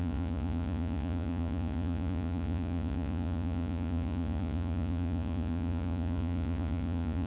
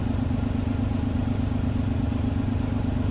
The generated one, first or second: first